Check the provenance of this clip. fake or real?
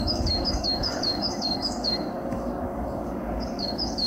fake